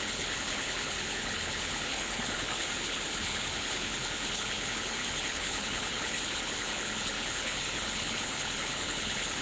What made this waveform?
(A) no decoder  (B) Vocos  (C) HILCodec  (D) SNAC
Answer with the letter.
C